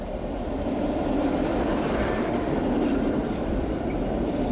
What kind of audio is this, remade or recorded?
remade